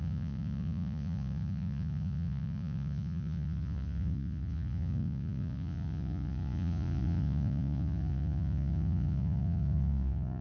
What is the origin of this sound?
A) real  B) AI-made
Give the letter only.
B